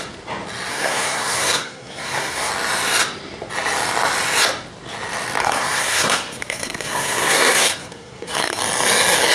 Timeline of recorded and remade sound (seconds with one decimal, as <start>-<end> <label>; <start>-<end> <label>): 0.0-0.7 recorded; 0.7-2.5 remade; 2.5-5.4 recorded; 5.4-8.6 remade; 8.6-9.3 recorded